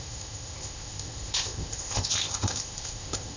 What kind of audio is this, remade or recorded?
remade